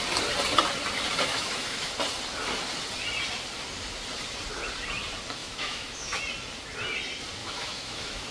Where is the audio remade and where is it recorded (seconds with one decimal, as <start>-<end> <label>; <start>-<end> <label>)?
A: 0.0-1.3 recorded; 1.3-1.9 remade; 1.9-5.4 recorded; 5.4-6.2 remade; 6.2-7.4 recorded; 7.4-8.3 remade

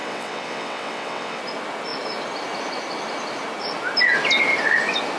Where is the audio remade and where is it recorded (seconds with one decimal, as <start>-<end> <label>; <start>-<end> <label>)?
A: 0.0-1.4 remade; 1.4-5.2 recorded